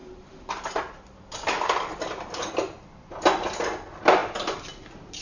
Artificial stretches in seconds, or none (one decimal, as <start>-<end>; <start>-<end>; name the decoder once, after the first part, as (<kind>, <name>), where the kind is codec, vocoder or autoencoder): 0.0-2.5 (vocoder, BigVGAN v2)